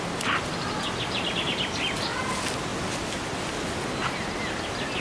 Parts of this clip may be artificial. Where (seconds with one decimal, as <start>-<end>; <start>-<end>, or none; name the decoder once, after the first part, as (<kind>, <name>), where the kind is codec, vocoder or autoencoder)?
none